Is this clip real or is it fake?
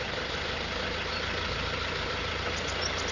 real